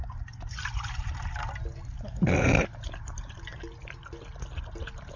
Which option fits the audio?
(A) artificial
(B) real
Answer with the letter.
B